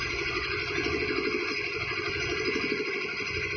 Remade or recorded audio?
remade